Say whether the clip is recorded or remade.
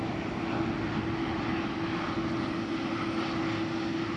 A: recorded